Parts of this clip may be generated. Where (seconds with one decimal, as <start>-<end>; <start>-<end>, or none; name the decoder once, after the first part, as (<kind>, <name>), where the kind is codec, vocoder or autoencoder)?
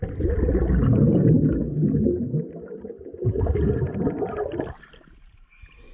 none